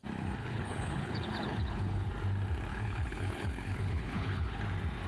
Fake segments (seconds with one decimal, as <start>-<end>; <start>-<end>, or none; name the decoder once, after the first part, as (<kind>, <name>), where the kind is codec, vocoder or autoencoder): 0.4-2.1 (codec, HILCodec); 2.7-4.6